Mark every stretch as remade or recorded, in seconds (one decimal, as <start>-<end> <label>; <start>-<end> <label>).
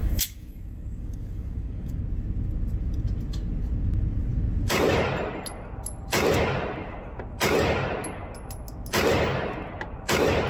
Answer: 0.0-2.0 remade; 2.0-10.5 recorded